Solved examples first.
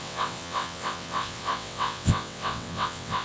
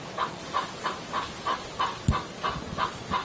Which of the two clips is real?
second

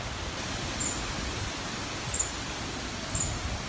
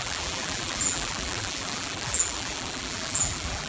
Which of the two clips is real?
first